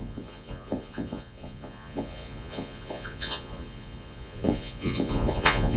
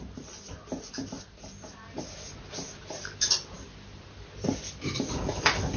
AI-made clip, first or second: first